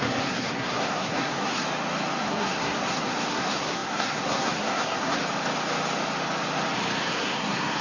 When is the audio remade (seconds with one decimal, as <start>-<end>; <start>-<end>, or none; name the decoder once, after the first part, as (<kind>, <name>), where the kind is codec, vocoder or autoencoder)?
0.0-1.6 (codec, SNAC); 2.2-5.2; 7.0-7.8